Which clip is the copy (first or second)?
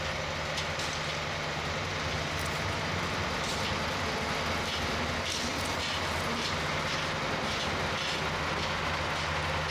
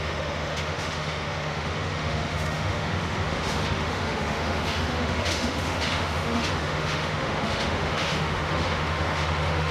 second